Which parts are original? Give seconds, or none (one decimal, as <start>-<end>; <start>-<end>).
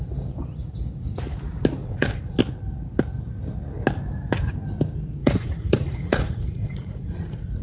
0.0-1.8; 2.4-5.2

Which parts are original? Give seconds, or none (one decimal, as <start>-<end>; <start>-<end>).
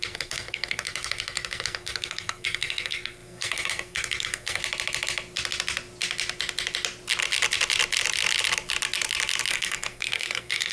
4.6-9.5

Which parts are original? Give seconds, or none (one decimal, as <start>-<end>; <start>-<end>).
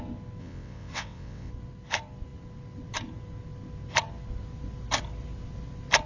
0.0-0.4; 1.5-6.1